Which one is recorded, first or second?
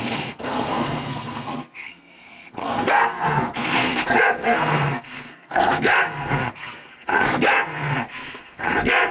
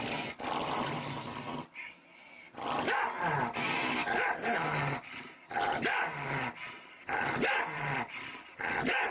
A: second